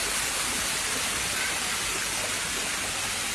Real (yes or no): yes